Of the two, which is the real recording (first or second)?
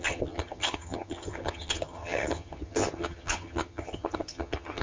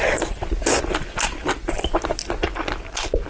second